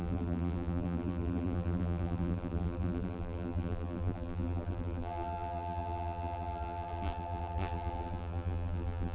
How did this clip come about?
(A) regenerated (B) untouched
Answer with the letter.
A